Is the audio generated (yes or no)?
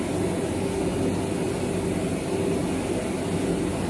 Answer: no